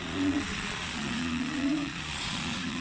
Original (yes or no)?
no